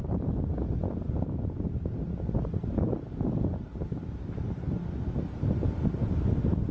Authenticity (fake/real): real